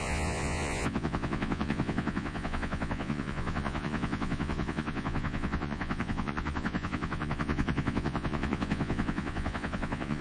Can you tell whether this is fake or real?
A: fake